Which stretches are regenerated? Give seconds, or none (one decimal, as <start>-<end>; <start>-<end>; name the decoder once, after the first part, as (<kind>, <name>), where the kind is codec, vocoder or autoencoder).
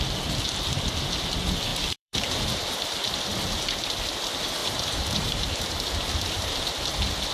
1.7-3.2 (vocoder, BigVGAN v2); 4.6-5.9